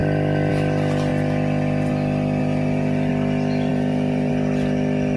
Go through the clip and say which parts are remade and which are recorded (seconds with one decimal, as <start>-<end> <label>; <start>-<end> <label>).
0.0-2.4 recorded; 2.4-3.1 remade; 3.1-3.7 recorded; 3.7-4.3 remade; 4.3-5.2 recorded